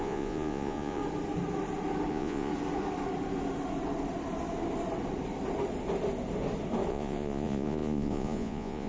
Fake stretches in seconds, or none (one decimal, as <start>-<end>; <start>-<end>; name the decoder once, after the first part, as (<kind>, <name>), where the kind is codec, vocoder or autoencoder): 0.0-1.0 (vocoder, Vocos); 2.1-2.5; 6.9-8.9